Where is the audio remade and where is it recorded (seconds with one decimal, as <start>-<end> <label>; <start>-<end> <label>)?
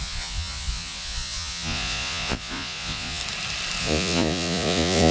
0.0-3.2 remade; 3.2-3.8 recorded; 3.8-5.1 remade